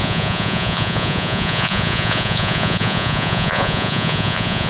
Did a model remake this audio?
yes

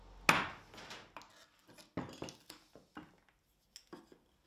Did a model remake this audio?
no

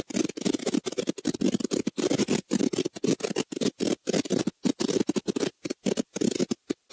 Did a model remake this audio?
no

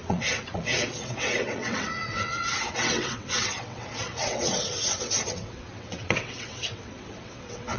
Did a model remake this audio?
yes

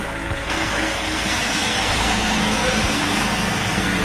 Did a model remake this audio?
yes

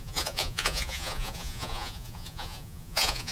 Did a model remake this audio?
yes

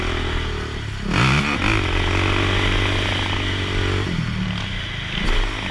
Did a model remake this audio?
no